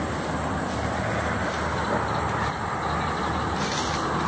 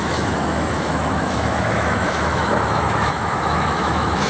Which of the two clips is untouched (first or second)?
first